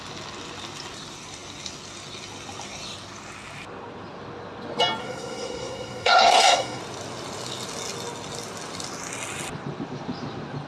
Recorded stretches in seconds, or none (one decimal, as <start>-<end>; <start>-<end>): 0.0-5.0; 6.8-10.7